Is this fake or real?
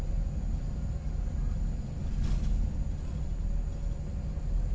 real